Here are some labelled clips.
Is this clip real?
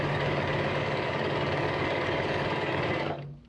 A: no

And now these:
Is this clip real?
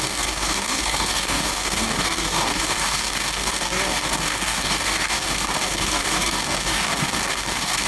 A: no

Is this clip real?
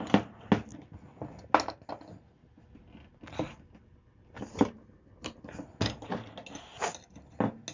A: yes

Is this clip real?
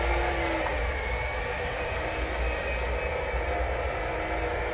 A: yes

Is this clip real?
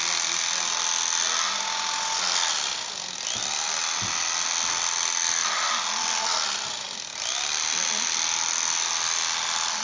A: yes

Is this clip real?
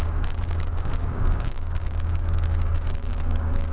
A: no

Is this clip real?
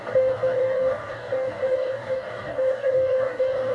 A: no